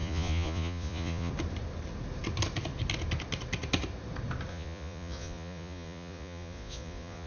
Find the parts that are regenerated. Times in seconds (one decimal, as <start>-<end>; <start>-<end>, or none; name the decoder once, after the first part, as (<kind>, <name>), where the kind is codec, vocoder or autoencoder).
0.0-1.3 (vocoder, Vocos); 4.5-7.3

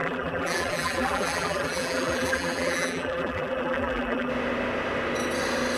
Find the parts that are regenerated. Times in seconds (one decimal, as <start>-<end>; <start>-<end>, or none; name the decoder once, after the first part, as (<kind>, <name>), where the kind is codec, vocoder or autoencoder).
0.0-4.3 (vocoder, BigVGAN v2)

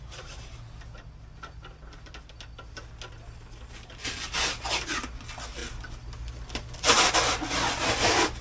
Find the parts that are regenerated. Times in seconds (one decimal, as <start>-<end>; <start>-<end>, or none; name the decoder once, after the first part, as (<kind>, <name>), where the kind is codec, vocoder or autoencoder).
none

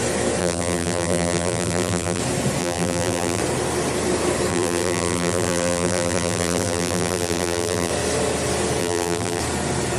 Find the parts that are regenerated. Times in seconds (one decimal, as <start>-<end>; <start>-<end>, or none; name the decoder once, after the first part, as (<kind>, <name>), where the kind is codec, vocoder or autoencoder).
0.4-2.2 (vocoder, BigVGAN v2); 2.6-3.4; 4.5-7.9; 8.8-9.4

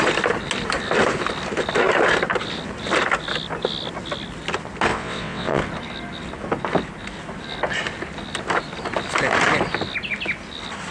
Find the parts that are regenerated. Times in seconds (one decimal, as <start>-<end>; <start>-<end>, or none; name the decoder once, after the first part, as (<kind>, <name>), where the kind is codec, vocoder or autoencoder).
4.9-5.6 (vocoder, WaveNeXt)